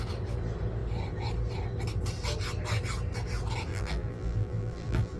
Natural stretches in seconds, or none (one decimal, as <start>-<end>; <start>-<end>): 0.0-3.7